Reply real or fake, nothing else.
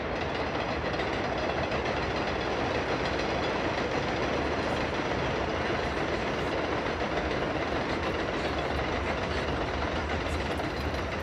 real